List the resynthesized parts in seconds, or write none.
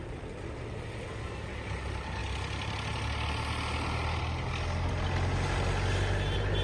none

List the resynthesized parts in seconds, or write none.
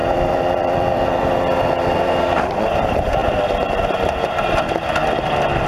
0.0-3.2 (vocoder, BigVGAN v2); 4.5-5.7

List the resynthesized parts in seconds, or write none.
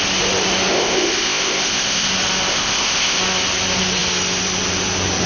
0.7-2.1 (codec, ZipCodec); 2.5-3.2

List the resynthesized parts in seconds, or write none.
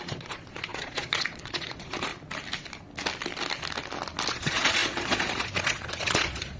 0.0-2.1 (vocoder, Vocos); 4.3-6.6